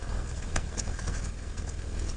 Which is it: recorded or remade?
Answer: remade